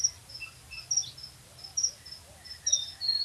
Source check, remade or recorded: recorded